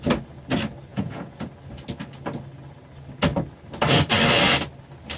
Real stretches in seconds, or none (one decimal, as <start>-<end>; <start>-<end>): 0.0-0.9; 1.5-5.2